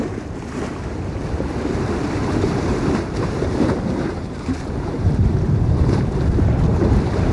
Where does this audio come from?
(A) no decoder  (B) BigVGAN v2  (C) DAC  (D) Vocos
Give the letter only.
B